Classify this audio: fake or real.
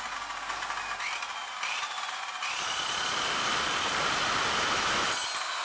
real